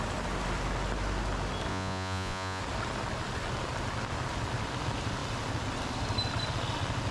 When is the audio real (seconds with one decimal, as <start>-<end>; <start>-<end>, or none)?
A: 0.0-1.7; 2.6-7.1